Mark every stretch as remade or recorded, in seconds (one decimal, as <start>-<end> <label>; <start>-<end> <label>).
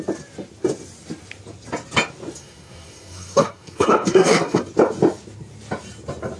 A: 0.0-2.4 recorded; 2.4-4.6 remade; 4.6-6.4 recorded